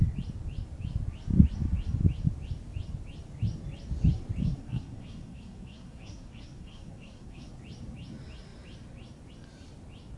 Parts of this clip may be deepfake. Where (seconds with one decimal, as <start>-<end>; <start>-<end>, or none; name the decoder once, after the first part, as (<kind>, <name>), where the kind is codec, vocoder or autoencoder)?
4.4-7.5 (codec, SNAC)